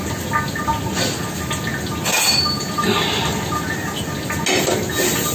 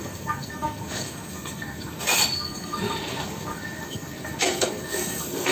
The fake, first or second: second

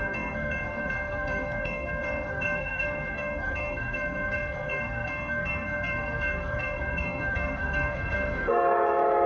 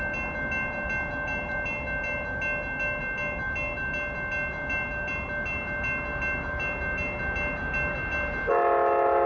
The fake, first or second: first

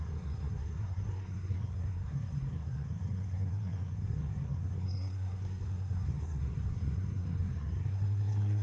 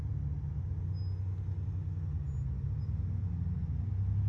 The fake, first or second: first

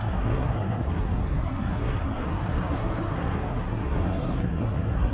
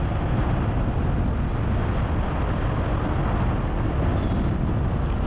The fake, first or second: first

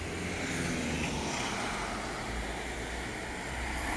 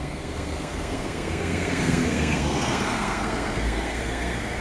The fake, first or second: second